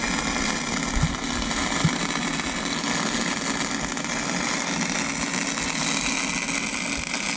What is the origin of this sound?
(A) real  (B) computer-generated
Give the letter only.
A